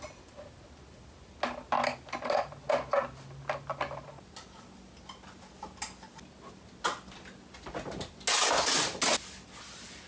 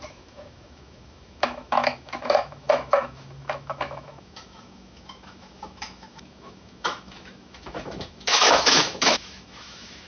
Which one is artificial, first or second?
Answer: second